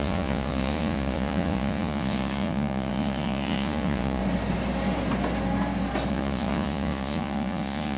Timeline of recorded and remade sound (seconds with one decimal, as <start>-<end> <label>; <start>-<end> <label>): 0.0-4.2 remade; 4.2-6.1 recorded; 6.1-8.0 remade

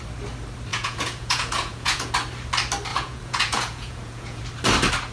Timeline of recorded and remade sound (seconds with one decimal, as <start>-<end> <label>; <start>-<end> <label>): 0.0-0.7 recorded; 0.7-2.1 remade; 2.1-2.9 recorded; 2.9-4.4 remade; 4.4-5.1 recorded

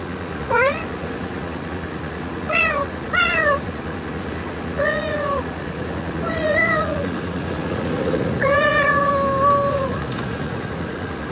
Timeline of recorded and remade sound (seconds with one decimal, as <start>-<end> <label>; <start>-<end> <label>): 0.0-9.1 remade; 9.1-9.7 recorded; 9.7-11.3 remade